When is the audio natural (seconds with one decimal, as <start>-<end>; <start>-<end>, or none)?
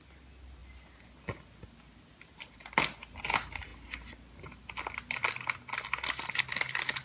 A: 0.0-7.0